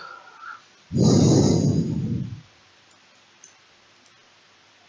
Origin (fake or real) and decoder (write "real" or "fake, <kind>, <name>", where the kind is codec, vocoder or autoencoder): real